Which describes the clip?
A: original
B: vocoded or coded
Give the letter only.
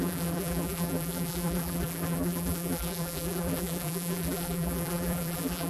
B